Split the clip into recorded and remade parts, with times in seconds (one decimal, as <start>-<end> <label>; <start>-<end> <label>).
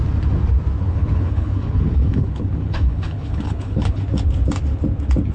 0.0-0.8 recorded; 0.8-4.0 remade; 4.0-5.3 recorded